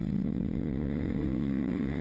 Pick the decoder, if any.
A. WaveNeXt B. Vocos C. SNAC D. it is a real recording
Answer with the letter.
A